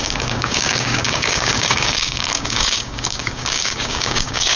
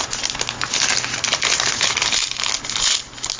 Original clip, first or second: second